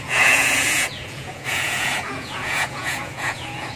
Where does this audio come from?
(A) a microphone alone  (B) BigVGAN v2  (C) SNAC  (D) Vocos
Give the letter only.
D